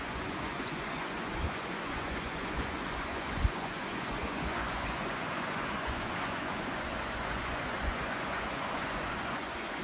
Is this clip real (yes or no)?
no